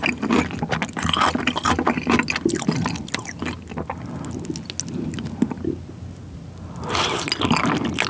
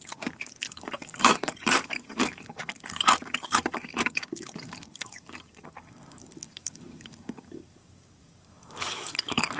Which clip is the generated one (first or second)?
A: second